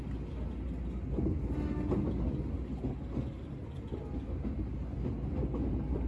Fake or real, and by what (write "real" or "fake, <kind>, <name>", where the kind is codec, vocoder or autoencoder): real